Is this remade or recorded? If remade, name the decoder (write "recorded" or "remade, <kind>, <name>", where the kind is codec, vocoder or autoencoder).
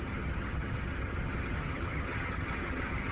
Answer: remade, vocoder, HiFi-GAN